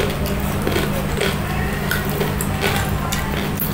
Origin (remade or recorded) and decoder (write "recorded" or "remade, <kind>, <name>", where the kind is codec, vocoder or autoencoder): recorded